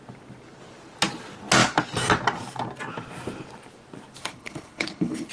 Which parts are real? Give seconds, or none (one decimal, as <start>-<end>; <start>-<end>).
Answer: 0.0-4.2